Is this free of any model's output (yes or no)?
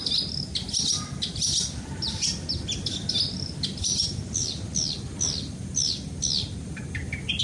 yes